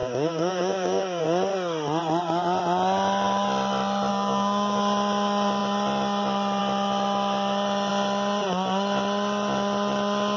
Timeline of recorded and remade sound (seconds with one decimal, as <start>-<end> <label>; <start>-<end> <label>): 0.0-1.2 remade; 1.2-4.1 recorded; 4.1-4.8 remade; 4.8-10.4 recorded